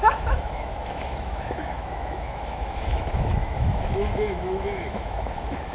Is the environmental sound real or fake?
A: fake